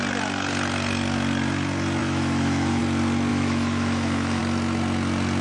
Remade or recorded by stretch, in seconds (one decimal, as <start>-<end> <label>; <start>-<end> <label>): 0.0-2.0 recorded; 2.0-2.8 remade; 2.8-3.3 recorded; 3.3-4.4 remade; 4.4-5.4 recorded